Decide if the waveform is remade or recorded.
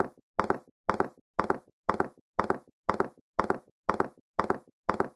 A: recorded